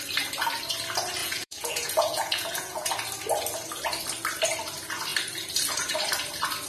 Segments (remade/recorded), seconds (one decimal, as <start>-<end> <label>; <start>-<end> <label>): 0.0-1.2 recorded; 1.2-2.9 remade; 2.9-6.7 recorded